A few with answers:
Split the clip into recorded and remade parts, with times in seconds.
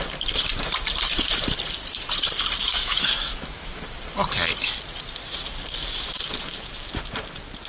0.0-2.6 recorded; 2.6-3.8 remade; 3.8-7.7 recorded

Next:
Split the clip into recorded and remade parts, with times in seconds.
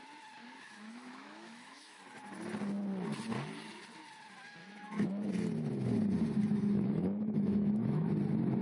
0.0-0.4 recorded; 0.4-2.0 remade; 2.0-4.6 recorded; 4.6-5.3 remade; 5.3-6.5 recorded; 6.5-8.1 remade; 8.1-8.6 recorded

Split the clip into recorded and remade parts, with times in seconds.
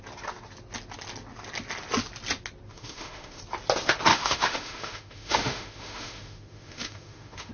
0.0-2.7 recorded; 2.7-3.4 remade; 3.4-4.1 recorded; 4.1-7.5 remade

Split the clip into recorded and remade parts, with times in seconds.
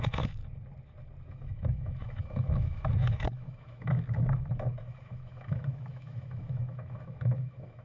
0.0-0.4 remade; 0.4-1.3 recorded; 1.3-7.8 remade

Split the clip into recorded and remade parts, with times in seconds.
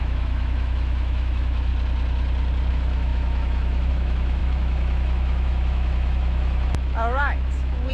0.0-1.7 remade; 1.7-2.7 recorded; 2.7-7.9 remade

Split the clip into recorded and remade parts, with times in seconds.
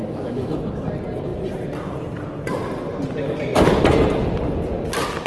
0.0-0.7 remade; 0.7-5.3 recorded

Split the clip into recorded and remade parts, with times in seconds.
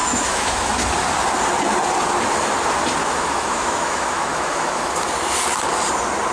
0.0-0.7 remade; 0.7-3.0 recorded; 3.0-4.9 remade; 4.9-6.3 recorded